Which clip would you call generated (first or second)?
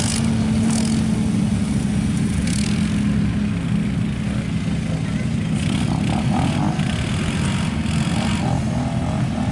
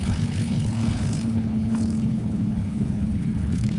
second